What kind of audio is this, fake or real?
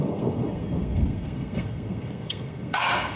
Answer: fake